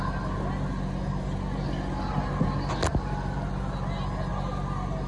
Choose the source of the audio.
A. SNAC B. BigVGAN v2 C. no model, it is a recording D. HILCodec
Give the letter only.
C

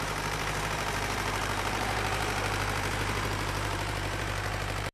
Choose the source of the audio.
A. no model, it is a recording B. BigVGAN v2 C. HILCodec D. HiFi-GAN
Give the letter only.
B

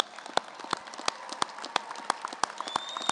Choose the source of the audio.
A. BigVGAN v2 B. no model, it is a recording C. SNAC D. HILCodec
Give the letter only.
B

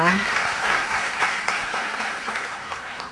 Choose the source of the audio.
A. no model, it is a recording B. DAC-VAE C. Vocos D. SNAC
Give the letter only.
D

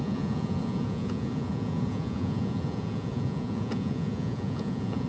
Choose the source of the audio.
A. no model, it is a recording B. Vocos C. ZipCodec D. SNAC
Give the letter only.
B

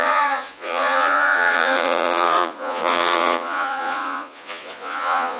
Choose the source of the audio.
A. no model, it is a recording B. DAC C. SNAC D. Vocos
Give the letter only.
D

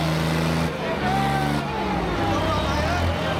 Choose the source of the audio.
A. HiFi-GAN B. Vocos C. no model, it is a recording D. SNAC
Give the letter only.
C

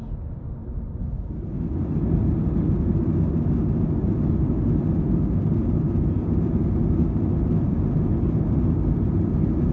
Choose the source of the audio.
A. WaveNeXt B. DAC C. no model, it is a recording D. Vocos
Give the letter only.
C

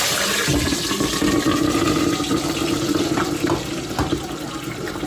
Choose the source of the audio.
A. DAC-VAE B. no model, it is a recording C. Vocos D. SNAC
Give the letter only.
B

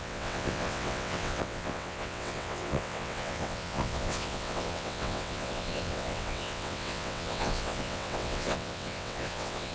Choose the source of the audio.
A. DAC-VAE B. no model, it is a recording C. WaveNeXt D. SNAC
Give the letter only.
C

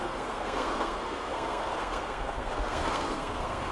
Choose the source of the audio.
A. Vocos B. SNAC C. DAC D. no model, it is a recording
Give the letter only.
B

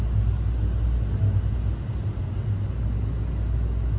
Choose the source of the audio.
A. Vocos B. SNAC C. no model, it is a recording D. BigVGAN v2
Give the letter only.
C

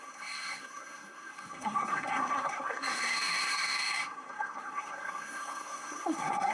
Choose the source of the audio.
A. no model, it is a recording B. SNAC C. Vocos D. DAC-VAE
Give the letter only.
B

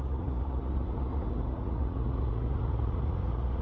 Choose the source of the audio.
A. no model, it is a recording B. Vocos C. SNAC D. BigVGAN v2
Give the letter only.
B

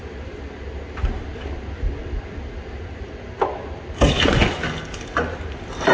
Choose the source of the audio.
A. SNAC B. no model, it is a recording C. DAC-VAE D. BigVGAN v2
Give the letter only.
B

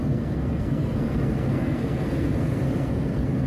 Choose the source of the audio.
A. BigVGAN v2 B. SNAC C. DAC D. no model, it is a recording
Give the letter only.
B